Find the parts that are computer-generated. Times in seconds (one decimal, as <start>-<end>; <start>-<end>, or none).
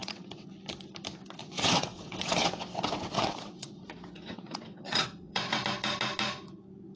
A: 0.0-0.5; 1.4-5.6